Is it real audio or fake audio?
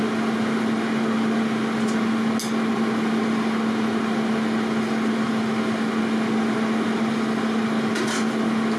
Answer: real